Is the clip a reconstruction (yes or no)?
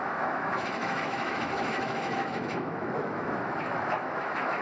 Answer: yes